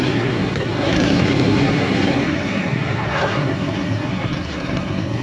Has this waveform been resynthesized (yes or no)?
yes